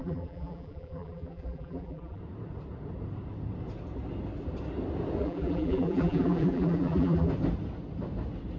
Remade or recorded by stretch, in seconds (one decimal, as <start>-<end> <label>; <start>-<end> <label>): 0.0-2.2 remade; 2.2-5.2 recorded; 5.2-7.3 remade; 7.3-8.6 recorded